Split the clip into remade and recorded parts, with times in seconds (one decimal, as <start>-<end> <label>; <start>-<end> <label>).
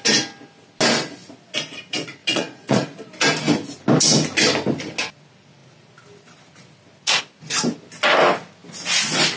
0.0-2.2 recorded; 2.2-3.0 remade; 3.0-9.4 recorded